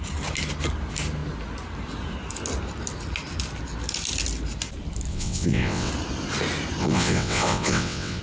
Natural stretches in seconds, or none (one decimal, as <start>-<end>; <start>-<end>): 0.0-5.1; 5.9-6.8